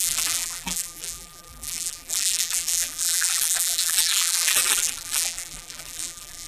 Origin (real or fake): fake